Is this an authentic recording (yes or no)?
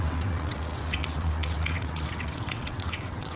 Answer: no